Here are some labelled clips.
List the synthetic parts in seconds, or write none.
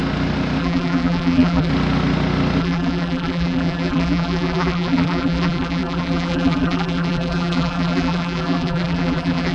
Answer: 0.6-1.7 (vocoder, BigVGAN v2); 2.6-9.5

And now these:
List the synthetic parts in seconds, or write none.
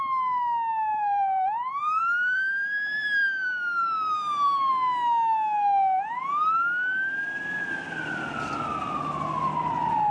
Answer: 0.9-4.7 (vocoder, BigVGAN v2)